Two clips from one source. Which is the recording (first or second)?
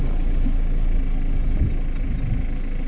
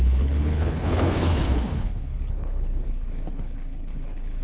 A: first